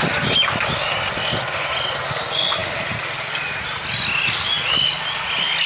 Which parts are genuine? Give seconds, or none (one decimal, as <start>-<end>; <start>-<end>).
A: 0.0-5.7